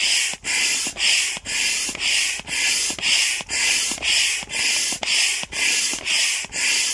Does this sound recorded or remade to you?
recorded